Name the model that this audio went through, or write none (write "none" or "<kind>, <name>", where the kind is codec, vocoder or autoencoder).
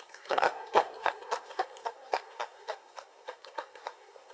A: codec, SNAC